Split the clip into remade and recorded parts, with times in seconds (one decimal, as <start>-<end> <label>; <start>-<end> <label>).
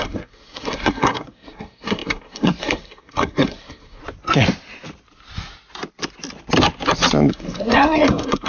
0.0-4.0 remade; 4.0-7.3 recorded; 7.3-8.5 remade